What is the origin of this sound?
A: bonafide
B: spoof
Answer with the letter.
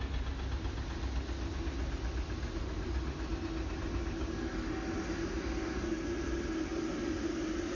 A